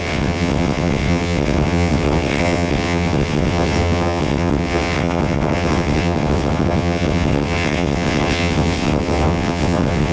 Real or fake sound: fake